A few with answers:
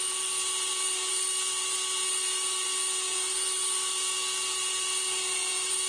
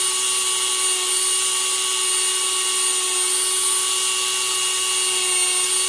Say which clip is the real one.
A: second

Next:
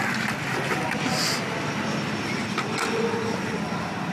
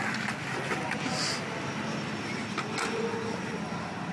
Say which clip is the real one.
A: second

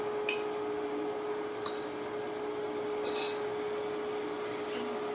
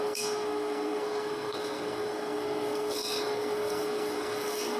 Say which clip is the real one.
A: first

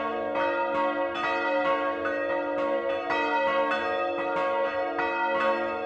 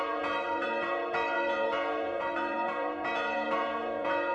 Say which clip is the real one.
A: first